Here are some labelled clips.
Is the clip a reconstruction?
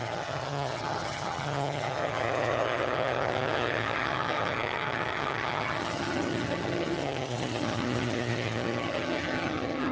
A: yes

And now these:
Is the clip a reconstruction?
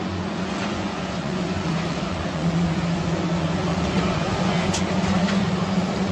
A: yes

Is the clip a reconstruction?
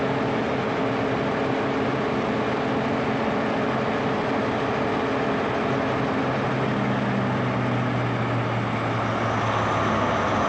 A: no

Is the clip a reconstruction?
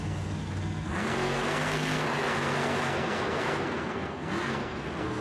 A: yes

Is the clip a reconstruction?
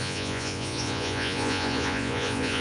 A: yes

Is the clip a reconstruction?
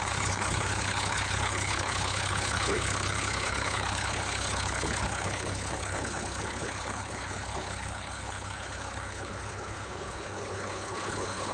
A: yes